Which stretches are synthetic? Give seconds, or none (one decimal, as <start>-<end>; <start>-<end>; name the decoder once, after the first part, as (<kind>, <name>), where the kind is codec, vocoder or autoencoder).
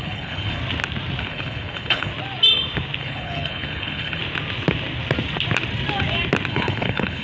0.0-0.6 (codec, HILCodec); 1.2-2.1; 3.0-4.2; 6.5-7.2